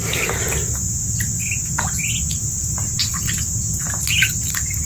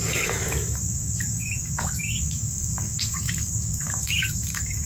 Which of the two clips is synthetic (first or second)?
second